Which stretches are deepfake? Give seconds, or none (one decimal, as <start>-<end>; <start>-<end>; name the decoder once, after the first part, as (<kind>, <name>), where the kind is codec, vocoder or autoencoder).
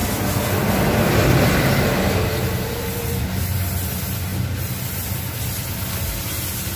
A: none